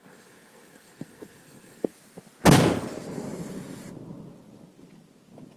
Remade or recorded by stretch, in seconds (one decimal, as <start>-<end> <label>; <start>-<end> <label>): 0.0-1.9 remade; 1.9-5.6 recorded

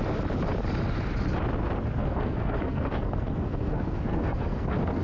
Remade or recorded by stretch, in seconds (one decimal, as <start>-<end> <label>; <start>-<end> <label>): 0.0-2.0 recorded; 2.0-5.0 remade